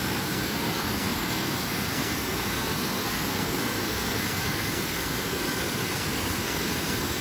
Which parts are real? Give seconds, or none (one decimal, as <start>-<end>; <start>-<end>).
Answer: none